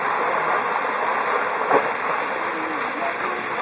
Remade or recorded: recorded